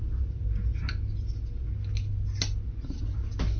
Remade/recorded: recorded